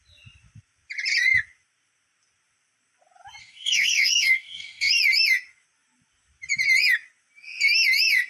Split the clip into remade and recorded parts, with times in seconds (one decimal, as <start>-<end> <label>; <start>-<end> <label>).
0.0-3.4 recorded; 3.4-4.9 remade; 4.9-8.3 recorded